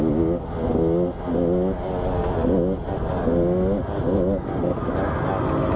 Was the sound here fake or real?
real